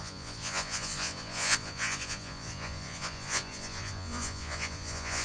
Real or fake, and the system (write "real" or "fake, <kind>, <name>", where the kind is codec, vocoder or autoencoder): fake, vocoder, Vocos